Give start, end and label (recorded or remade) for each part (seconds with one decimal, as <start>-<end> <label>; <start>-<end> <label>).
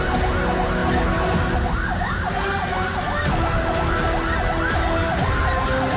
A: 0.0-6.0 recorded